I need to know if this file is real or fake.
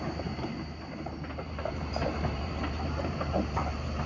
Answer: fake